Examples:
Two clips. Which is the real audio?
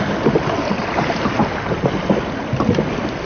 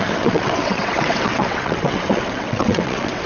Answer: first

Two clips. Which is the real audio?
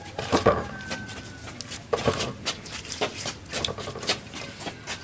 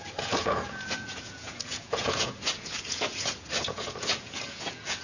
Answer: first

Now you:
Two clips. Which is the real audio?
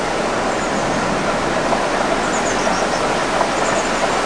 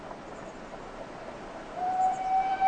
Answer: first